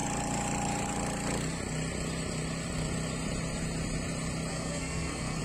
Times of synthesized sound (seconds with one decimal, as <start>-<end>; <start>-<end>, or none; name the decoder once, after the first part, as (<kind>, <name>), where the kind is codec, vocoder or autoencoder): 4.5-5.4 (codec, SNAC)